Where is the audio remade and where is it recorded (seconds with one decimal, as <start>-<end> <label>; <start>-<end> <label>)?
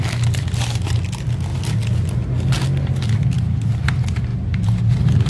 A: 0.0-4.3 recorded; 4.3-4.8 remade; 4.8-5.3 recorded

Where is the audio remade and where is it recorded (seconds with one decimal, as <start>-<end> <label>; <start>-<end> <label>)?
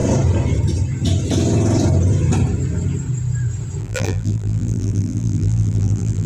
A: 0.0-3.8 recorded; 3.8-6.3 remade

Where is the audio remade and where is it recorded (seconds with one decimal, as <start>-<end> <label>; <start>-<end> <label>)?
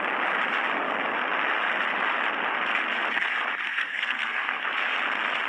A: 0.0-3.7 recorded; 3.7-4.6 remade; 4.6-5.5 recorded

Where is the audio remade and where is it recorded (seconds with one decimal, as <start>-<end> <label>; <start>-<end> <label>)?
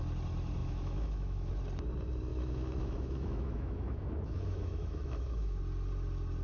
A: 0.0-0.6 recorded; 0.6-1.5 remade; 1.5-2.3 recorded; 2.3-5.6 remade; 5.6-6.4 recorded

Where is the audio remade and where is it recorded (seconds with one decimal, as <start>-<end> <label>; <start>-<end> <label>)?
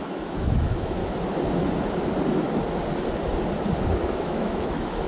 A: 0.0-1.0 remade; 1.0-4.1 recorded; 4.1-5.1 remade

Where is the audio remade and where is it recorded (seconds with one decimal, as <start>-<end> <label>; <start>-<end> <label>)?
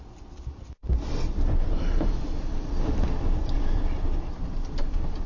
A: 0.0-5.3 recorded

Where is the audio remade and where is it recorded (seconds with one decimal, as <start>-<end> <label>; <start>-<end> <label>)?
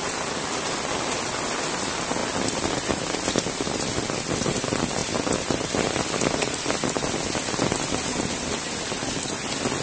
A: 0.0-9.8 recorded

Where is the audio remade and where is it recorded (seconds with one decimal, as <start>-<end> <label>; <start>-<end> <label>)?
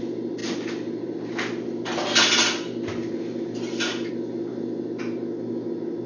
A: 0.0-6.1 recorded